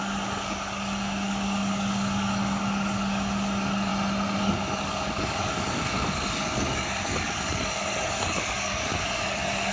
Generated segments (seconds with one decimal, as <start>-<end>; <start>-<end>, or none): 0.0-3.9; 4.4-9.7